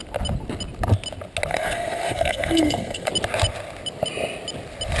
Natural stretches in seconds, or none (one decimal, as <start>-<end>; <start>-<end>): 0.0-1.5; 3.1-5.0